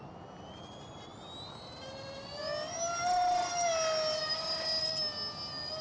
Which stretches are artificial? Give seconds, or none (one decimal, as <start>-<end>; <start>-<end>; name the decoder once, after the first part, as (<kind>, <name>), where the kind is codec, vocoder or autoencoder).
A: none